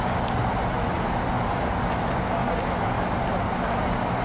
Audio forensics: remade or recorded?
recorded